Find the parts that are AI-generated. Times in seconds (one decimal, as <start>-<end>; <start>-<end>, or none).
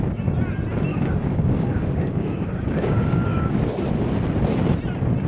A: 0.9-3.6